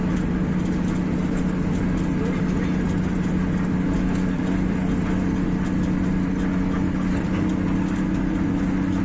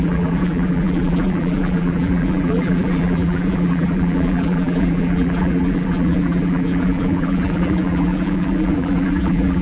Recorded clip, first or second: first